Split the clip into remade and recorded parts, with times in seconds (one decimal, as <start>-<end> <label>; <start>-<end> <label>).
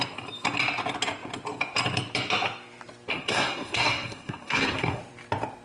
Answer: 0.0-3.1 recorded; 3.1-5.0 remade; 5.0-5.6 recorded